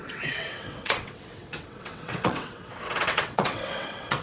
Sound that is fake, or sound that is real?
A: fake